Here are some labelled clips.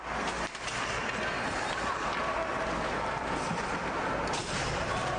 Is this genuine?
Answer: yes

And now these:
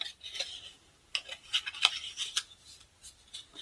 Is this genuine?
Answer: yes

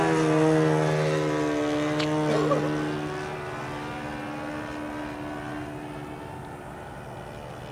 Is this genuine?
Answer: yes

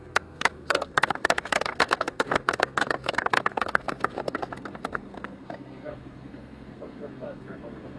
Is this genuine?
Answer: no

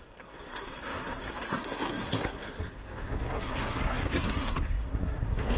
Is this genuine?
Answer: no